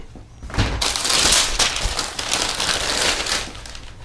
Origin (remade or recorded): recorded